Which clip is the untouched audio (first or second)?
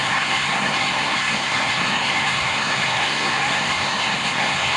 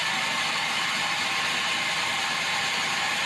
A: second